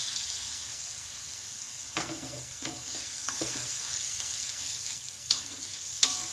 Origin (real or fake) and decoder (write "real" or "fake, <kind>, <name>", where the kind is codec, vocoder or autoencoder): fake, codec, SNAC